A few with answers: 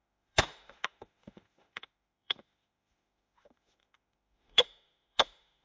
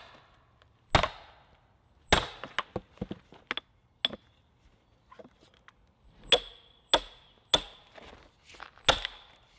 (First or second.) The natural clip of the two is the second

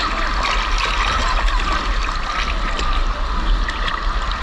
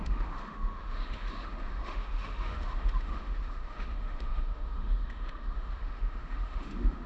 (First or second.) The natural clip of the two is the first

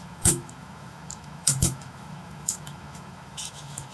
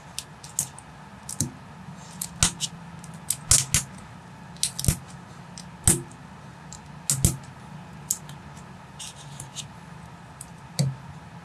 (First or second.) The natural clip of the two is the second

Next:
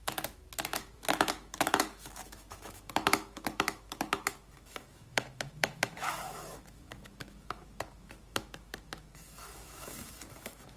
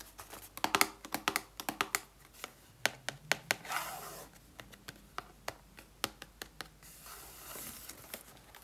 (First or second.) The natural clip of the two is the second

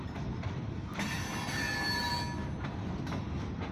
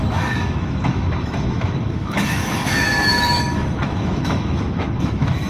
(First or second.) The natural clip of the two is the first